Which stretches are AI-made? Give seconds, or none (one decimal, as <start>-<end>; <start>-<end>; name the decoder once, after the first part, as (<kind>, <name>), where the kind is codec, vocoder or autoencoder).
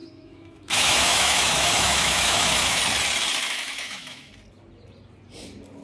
0.0-2.8 (autoencoder, DAC-VAE); 3.4-4.3